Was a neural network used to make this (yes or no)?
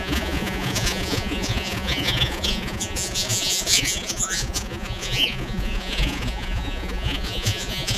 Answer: yes